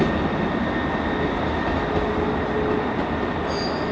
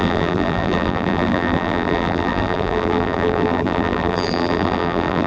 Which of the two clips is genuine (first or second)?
first